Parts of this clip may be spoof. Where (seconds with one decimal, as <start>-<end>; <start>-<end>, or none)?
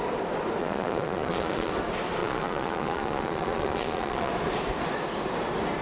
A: 0.6-1.7; 2.2-4.3